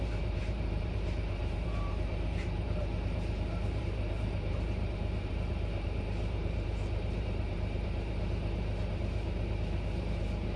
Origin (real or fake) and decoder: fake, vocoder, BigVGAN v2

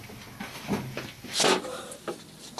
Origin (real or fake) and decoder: real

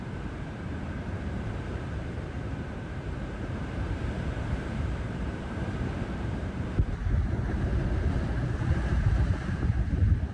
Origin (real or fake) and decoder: fake, vocoder, BigVGAN v2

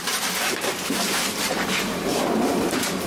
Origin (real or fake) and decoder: fake, vocoder, BigVGAN v2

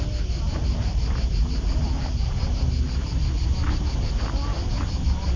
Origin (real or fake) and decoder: real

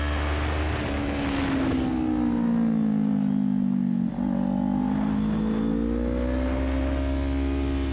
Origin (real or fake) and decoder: real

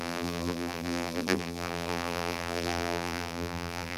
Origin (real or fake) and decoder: fake, vocoder, BigVGAN v2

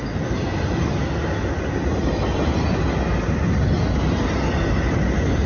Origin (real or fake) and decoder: real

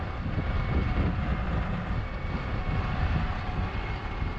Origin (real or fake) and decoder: fake, vocoder, BigVGAN v2